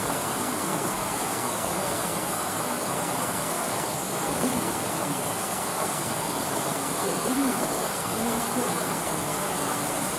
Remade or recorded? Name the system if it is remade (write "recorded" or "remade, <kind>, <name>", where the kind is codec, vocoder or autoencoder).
remade, codec, SNAC